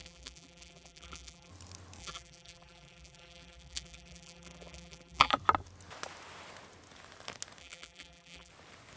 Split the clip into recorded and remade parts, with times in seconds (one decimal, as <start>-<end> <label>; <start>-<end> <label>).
0.0-1.5 remade; 1.5-2.0 recorded; 2.0-5.3 remade; 5.3-7.6 recorded; 7.6-8.5 remade; 8.5-9.0 recorded